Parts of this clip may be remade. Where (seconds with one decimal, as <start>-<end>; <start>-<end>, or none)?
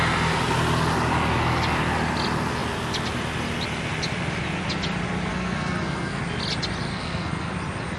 5.3-6.2; 6.9-7.5